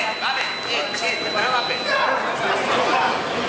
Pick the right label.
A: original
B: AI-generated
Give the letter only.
A